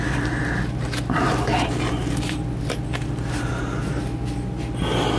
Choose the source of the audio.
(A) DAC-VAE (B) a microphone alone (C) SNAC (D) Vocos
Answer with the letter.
B